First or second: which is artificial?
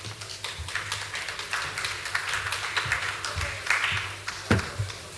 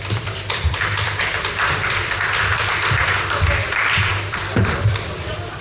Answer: second